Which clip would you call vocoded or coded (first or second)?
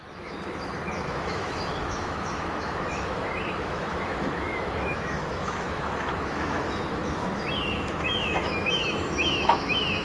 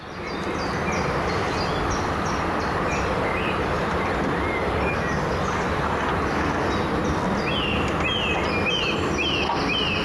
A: first